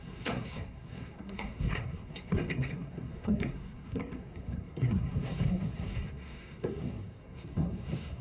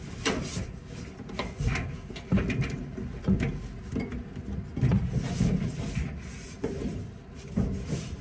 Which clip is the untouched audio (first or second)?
second